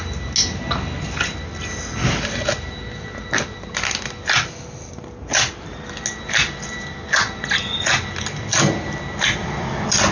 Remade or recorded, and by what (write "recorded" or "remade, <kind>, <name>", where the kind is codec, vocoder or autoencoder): recorded